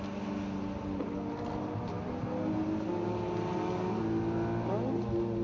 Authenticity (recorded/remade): recorded